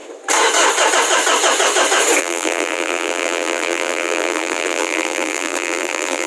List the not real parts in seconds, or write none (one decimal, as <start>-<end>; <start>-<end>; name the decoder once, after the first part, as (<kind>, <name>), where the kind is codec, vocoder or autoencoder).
2.2-6.3 (vocoder, BigVGAN v2)